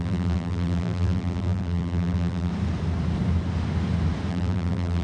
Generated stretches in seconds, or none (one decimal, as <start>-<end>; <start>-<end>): 0.0-2.5; 4.3-5.0